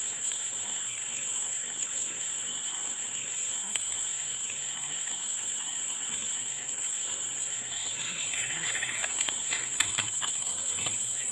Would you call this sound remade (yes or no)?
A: yes